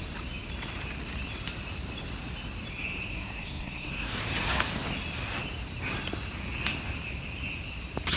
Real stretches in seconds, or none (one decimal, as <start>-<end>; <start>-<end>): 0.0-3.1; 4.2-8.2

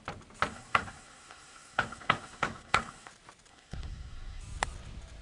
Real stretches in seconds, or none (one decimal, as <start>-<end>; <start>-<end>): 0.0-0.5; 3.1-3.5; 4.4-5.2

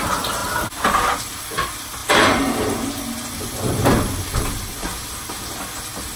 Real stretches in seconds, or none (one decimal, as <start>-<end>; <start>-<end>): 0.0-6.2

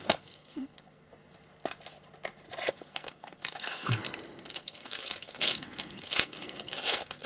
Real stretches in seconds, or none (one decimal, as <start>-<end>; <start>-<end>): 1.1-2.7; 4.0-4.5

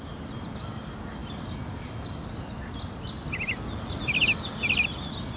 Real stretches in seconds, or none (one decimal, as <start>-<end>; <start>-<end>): 0.0-5.4